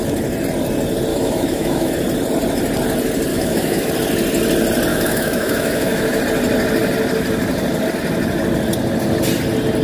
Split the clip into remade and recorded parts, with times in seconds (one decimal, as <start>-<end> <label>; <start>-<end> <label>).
0.0-1.1 recorded; 1.1-1.9 remade; 1.9-3.3 recorded; 3.3-3.9 remade; 3.9-4.9 recorded; 4.9-6.2 remade; 6.2-9.8 recorded